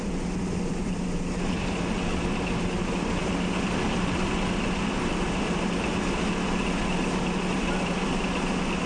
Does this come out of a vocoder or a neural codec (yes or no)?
no